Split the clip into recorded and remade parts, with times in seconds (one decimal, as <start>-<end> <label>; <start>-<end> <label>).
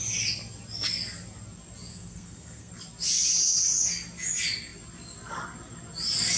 0.0-1.9 recorded; 1.9-2.7 remade; 2.7-6.4 recorded